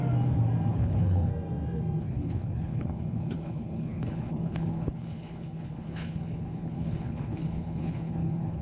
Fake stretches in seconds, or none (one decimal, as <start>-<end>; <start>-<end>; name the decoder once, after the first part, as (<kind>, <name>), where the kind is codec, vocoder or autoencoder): 0.7-1.3 (codec, HILCodec); 2.0-8.6